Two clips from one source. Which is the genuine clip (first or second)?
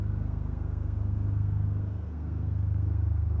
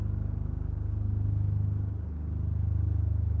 second